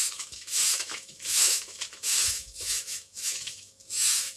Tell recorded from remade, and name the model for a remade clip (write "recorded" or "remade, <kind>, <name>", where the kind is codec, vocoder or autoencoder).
remade, autoencoder, DAC-VAE